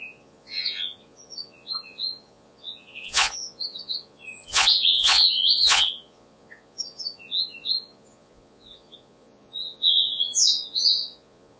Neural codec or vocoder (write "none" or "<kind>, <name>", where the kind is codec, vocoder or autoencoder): vocoder, Vocos